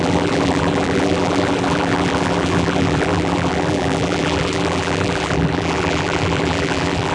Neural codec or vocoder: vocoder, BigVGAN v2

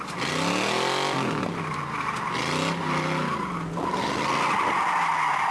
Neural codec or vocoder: none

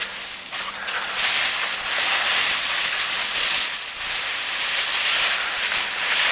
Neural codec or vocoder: none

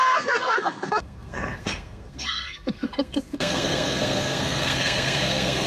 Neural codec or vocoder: codec, SNAC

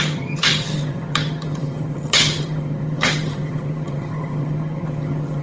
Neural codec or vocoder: vocoder, HiFi-GAN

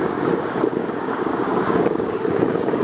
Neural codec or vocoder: codec, DAC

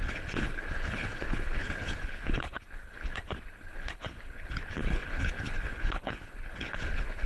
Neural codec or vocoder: codec, HILCodec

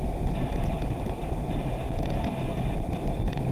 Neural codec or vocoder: none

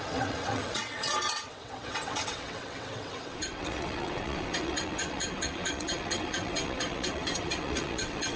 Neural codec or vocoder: vocoder, WaveNeXt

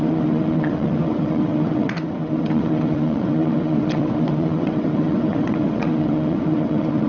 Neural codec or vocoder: vocoder, WaveNeXt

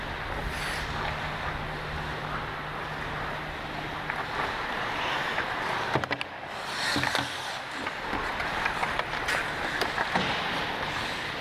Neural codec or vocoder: none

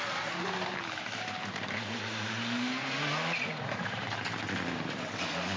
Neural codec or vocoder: none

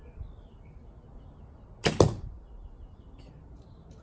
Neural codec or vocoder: none